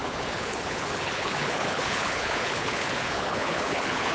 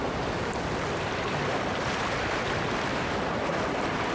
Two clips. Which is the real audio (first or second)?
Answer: second